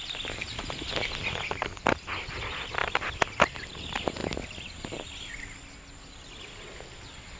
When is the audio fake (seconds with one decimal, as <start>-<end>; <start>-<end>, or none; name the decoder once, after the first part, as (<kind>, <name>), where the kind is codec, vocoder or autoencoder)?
none